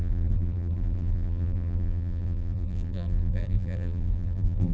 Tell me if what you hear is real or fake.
fake